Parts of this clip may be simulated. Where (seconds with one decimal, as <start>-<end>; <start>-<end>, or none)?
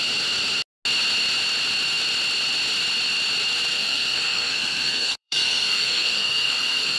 3.7-7.0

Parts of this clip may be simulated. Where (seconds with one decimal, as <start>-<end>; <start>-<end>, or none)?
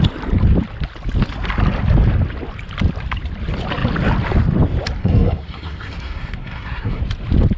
5.0-7.0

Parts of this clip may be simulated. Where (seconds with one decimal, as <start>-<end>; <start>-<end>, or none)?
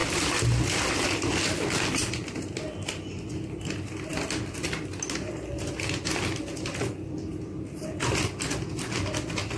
none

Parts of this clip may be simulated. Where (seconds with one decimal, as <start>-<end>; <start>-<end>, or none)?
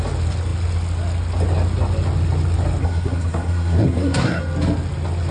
2.8-4.4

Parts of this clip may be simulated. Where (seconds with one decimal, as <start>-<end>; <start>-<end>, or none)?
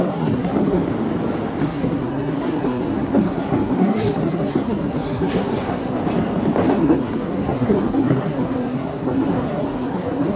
0.0-0.8; 1.6-6.0; 6.7-10.4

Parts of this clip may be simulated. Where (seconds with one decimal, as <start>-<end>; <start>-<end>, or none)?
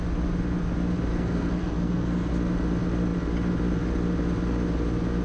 1.1-2.3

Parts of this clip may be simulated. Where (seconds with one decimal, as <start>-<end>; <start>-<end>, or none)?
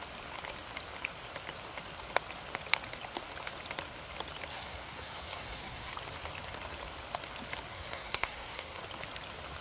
4.5-5.9; 7.7-8.8